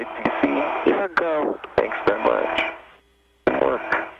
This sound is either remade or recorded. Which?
recorded